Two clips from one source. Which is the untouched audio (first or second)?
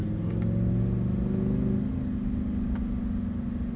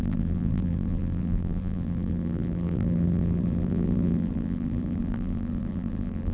first